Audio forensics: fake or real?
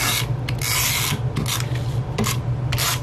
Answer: fake